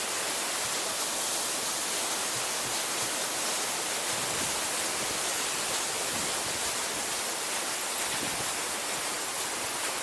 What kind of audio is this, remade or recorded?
recorded